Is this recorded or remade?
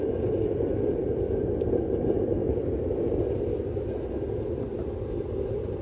recorded